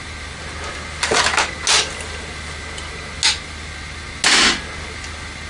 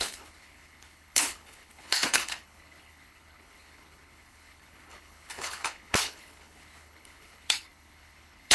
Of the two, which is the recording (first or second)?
first